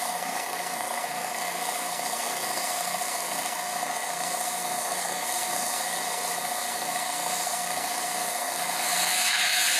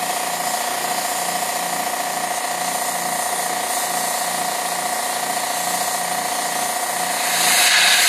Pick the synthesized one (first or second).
first